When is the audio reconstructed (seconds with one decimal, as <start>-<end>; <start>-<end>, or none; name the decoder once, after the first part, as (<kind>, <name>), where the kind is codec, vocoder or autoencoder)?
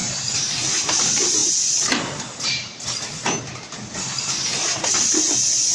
0.0-5.7 (vocoder, BigVGAN v2)